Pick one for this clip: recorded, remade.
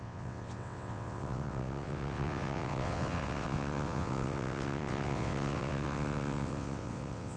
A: remade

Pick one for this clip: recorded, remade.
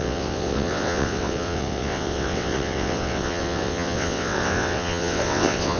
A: remade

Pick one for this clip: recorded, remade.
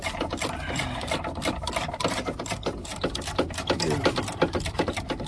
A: recorded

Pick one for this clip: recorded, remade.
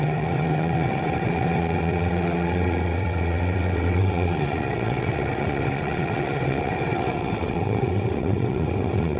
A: remade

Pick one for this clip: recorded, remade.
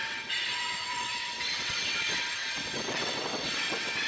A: remade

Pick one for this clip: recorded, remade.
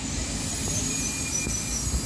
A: recorded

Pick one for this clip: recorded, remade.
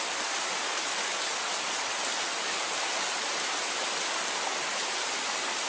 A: recorded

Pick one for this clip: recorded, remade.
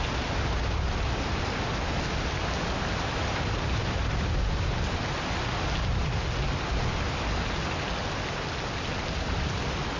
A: recorded